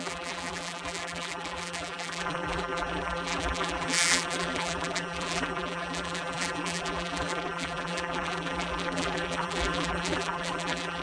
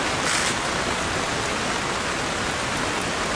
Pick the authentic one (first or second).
second